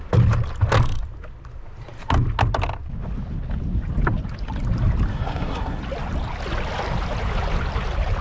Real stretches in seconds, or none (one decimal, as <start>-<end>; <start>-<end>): 0.0-5.1; 5.8-8.2